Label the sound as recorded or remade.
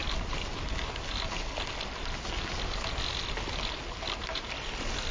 recorded